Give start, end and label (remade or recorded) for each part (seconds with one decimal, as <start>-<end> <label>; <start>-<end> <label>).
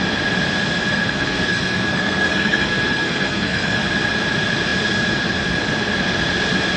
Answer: 0.0-0.9 recorded; 0.9-3.8 remade; 3.8-6.8 recorded